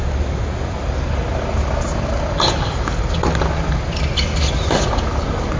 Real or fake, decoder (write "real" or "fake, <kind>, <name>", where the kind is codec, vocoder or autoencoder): real